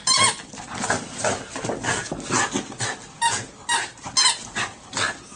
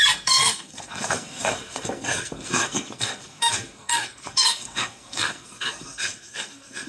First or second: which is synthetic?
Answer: second